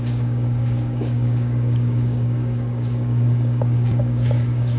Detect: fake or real fake